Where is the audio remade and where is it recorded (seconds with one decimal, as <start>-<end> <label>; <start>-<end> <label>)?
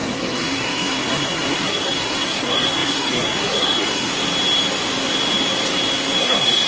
0.0-4.1 remade; 4.1-6.2 recorded; 6.2-6.7 remade